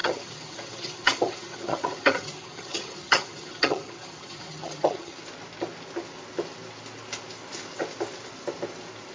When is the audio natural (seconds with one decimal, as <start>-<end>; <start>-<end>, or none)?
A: 5.2-9.1